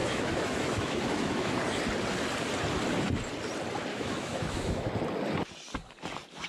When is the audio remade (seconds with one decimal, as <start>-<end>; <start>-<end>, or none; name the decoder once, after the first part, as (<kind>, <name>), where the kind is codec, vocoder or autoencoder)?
0.0-1.5 (autoencoder, DAC-VAE); 3.9-4.9